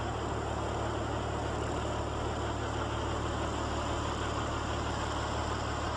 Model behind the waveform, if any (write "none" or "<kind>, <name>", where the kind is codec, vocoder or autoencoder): none